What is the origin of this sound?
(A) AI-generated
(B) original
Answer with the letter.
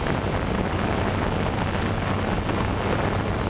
B